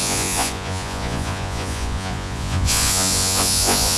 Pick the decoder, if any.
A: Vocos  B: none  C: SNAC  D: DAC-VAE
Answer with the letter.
A